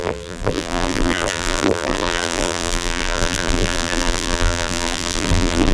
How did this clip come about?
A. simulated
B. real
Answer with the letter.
A